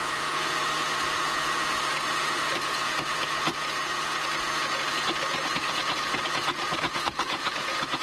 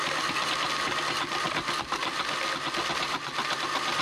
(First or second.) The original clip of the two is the second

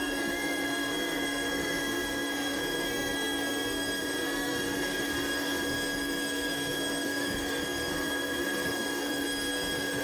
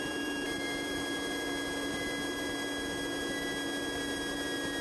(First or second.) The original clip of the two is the second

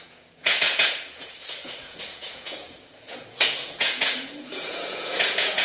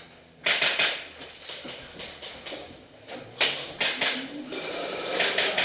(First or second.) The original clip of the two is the second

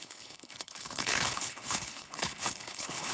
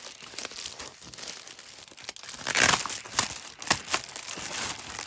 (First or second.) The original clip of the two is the second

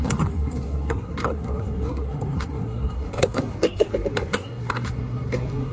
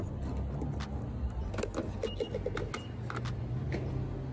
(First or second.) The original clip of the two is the second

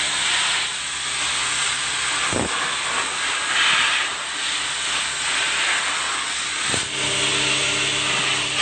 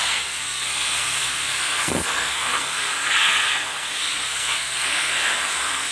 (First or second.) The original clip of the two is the first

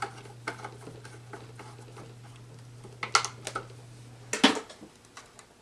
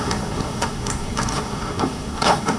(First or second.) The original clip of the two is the first